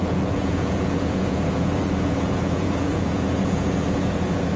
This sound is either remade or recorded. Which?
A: remade